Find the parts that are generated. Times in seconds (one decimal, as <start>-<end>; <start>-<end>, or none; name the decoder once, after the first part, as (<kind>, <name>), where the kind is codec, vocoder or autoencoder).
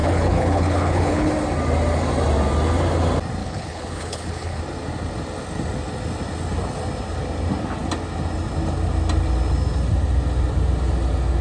0.0-1.3 (codec, HILCodec); 3.4-4.6